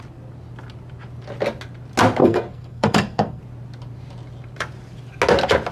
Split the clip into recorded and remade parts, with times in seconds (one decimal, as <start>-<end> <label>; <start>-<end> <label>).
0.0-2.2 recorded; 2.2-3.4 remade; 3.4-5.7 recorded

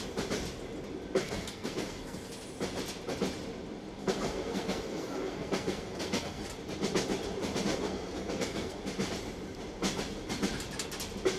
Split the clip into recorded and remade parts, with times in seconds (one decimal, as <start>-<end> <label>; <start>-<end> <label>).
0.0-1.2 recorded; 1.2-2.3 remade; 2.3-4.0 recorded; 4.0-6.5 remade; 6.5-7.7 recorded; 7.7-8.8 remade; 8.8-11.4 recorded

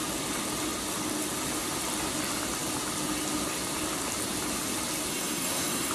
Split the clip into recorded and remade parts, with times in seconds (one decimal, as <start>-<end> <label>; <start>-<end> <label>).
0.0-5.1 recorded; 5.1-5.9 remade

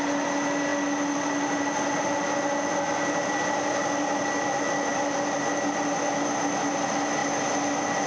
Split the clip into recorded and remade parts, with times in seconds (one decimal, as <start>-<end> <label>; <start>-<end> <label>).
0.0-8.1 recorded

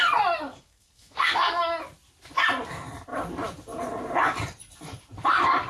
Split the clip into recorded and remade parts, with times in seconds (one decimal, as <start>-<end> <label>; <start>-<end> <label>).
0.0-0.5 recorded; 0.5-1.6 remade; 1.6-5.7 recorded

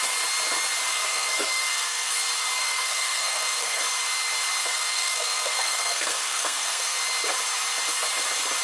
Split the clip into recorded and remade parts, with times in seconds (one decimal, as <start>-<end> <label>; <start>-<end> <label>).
0.0-0.9 recorded; 0.9-2.1 remade; 2.1-2.6 recorded; 2.6-3.8 remade; 3.8-4.6 recorded; 4.6-7.0 remade; 7.0-8.6 recorded

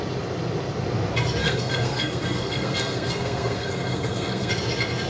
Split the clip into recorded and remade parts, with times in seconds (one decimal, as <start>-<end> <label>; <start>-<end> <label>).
0.0-1.4 recorded; 1.4-4.5 remade; 4.5-5.1 recorded

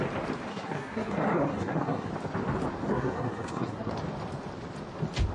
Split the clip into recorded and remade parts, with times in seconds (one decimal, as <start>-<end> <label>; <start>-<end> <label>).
0.0-0.5 recorded; 0.5-2.1 remade; 2.1-2.9 recorded; 2.9-3.9 remade; 3.9-5.3 recorded